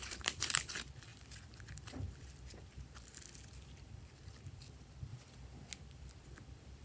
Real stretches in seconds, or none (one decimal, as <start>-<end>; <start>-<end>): 5.1-5.8